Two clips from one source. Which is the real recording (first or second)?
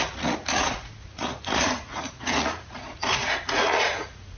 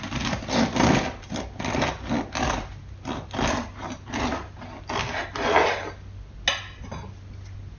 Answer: second